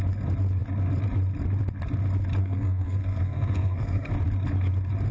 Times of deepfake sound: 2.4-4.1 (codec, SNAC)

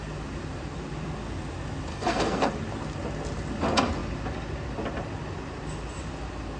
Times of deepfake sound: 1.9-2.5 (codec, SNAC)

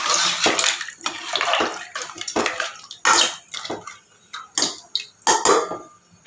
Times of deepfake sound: none

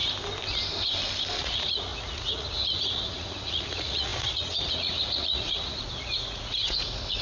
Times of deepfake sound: 1.4-7.2 (vocoder, Vocos)

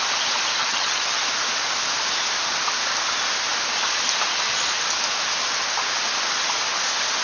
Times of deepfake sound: 0.6-1.2 (vocoder, HiFi-GAN)

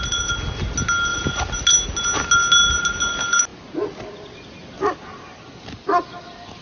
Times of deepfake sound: none